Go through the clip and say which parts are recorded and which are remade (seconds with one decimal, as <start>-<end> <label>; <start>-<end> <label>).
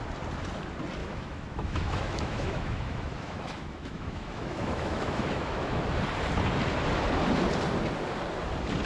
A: 0.0-1.0 recorded; 1.0-5.8 remade; 5.8-8.9 recorded